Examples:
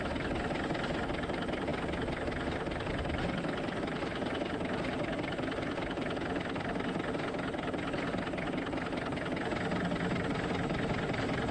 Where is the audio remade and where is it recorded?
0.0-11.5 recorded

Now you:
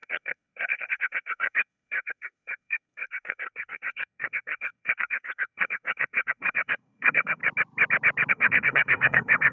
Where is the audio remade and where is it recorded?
0.0-7.4 remade; 7.4-8.3 recorded; 8.3-9.5 remade

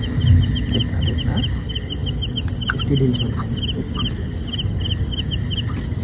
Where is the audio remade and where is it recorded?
0.0-6.0 recorded

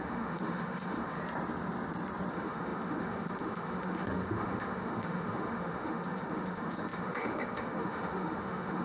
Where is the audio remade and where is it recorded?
0.0-1.2 remade; 1.2-2.3 recorded; 2.3-8.8 remade

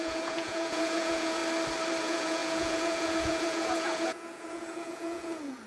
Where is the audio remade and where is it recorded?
0.0-1.4 remade; 1.4-2.0 recorded; 2.0-5.7 remade